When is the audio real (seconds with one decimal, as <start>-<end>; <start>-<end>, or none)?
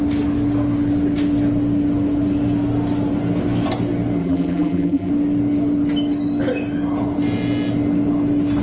0.0-4.2; 5.1-8.6